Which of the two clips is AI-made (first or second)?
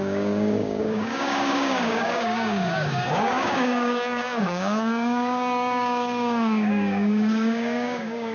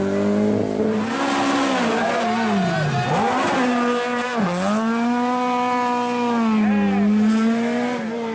first